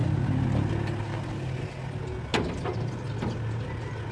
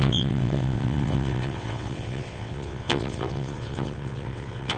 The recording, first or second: first